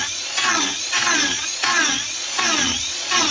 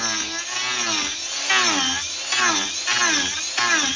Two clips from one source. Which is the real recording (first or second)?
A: second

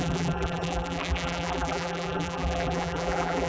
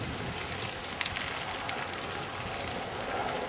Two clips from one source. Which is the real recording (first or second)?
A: second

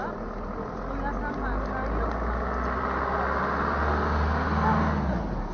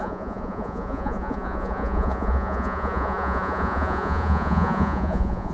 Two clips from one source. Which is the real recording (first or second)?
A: first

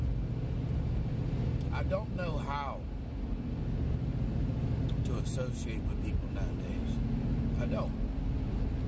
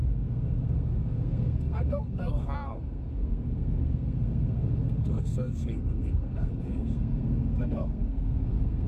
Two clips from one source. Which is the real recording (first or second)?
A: first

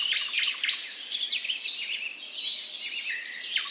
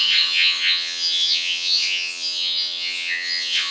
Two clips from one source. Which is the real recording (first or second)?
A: first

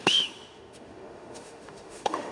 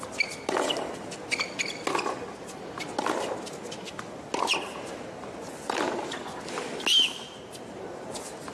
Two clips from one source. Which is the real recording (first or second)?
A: second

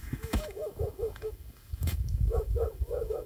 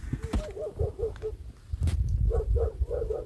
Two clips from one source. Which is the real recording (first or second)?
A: second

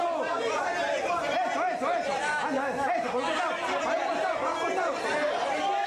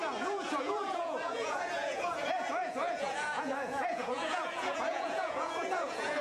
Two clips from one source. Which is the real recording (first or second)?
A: first